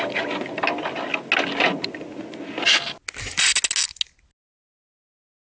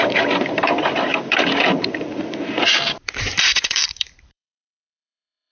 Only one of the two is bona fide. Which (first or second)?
first